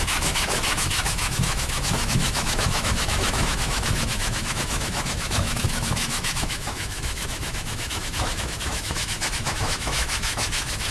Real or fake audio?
fake